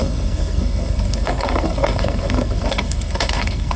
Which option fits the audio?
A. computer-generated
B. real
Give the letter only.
A